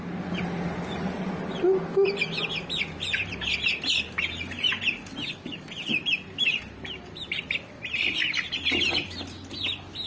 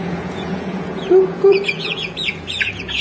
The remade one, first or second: second